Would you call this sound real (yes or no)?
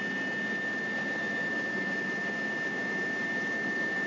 yes